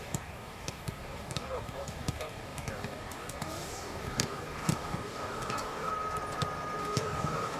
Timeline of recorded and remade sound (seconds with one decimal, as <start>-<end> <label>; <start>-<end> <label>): 0.0-5.9 remade; 5.9-6.8 recorded; 6.8-7.6 remade